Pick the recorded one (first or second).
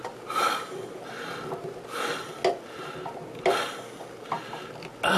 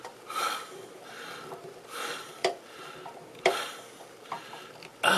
first